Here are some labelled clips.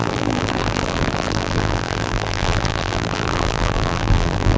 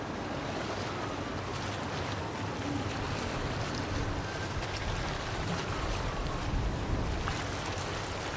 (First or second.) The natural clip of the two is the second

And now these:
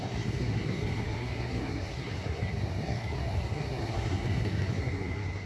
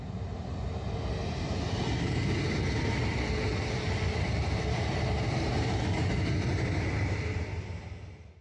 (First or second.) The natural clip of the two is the second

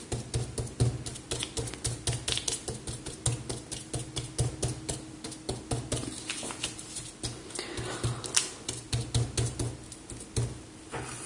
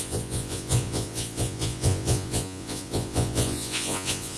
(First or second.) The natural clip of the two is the first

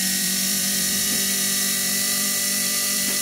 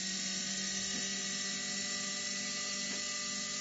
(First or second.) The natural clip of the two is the second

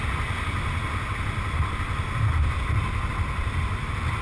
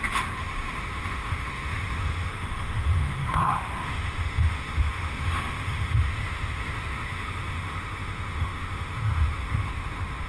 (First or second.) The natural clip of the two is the first